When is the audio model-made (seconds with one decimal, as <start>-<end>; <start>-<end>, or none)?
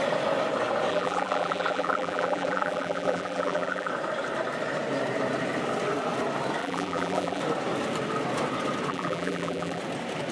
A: 0.9-3.9; 6.6-7.4; 8.9-9.8